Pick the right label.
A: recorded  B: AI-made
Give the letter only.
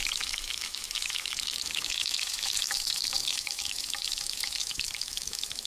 B